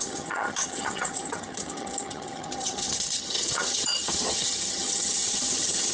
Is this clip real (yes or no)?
no